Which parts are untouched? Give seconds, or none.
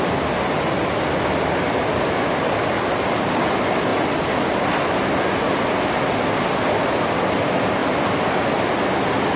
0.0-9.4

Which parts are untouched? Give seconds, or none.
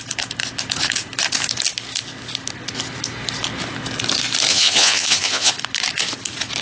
0.0-4.5; 5.5-6.6